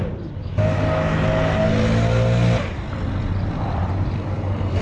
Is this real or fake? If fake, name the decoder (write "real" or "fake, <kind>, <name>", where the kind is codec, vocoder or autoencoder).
real